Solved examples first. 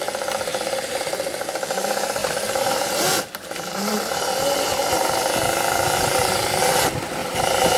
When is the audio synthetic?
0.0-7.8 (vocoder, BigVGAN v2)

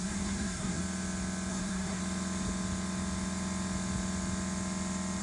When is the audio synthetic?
0.0-0.8 (codec, SNAC); 1.5-2.0

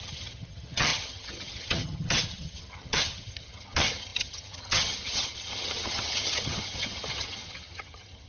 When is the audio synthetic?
0.0-8.3 (vocoder, HiFi-GAN)

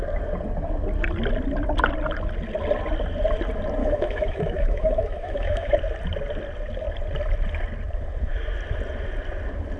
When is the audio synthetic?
3.8-5.7 (autoencoder, DAC-VAE)